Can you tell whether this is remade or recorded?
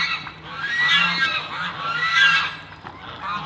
recorded